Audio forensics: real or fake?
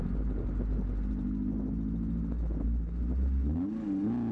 real